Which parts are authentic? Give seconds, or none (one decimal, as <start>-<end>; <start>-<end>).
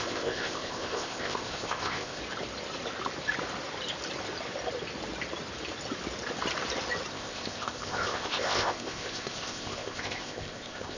2.2-7.1